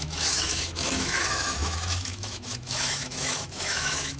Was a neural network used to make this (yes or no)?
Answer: yes